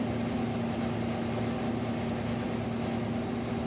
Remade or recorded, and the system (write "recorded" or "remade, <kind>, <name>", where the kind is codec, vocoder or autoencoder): recorded